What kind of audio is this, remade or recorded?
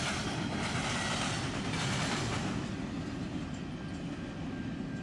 recorded